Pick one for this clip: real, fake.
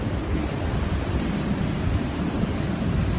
real